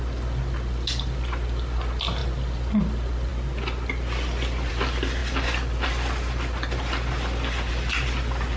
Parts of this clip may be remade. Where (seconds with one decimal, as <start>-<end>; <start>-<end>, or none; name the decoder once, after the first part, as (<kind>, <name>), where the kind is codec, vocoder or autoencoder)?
none